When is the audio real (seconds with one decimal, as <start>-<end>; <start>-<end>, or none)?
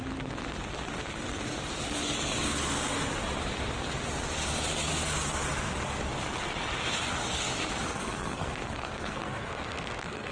0.0-7.9